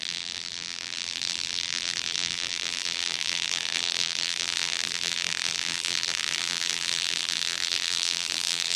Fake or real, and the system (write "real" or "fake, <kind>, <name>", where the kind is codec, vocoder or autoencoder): fake, vocoder, BigVGAN v2